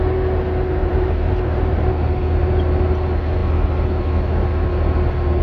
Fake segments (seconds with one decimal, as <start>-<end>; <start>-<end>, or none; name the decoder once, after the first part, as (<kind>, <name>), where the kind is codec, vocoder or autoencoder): 0.8-1.9 (vocoder, BigVGAN v2)